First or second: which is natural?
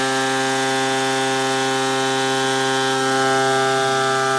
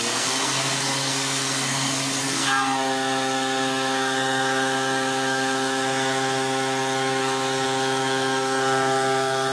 first